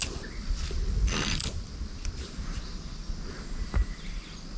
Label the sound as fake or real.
real